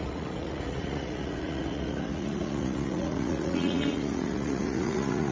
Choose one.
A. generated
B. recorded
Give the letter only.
A